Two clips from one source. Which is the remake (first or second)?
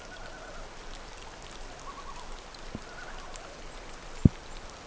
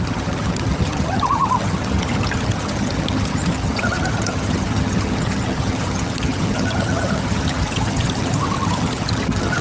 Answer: second